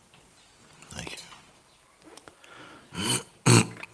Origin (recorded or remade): recorded